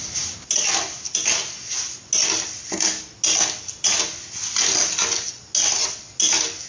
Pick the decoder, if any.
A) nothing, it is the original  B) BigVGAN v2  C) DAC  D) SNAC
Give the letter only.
A